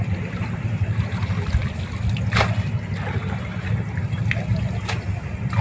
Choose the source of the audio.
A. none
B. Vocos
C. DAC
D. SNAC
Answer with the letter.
A